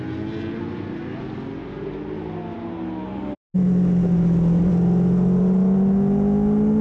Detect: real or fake real